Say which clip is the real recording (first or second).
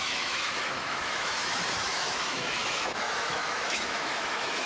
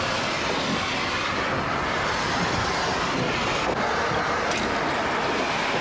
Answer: second